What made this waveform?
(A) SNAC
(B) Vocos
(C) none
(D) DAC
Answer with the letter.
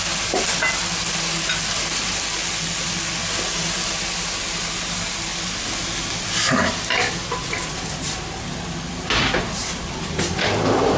C